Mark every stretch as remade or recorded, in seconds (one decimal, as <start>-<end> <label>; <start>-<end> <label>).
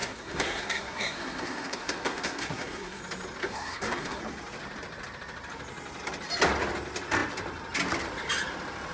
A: 0.0-3.0 remade; 3.0-3.4 recorded; 3.4-4.2 remade; 4.2-8.9 recorded